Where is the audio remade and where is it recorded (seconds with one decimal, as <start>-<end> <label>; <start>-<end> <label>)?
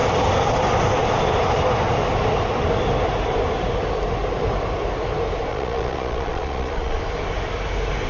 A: 0.0-5.5 recorded; 5.5-7.0 remade; 7.0-8.1 recorded